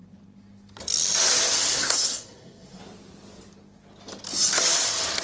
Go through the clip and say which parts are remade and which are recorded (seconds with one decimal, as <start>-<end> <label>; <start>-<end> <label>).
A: 0.0-1.7 recorded; 1.7-2.8 remade; 2.8-5.2 recorded